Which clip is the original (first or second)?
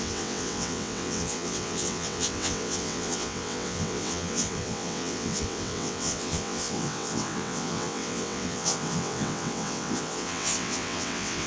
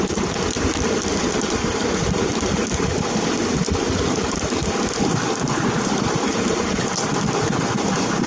second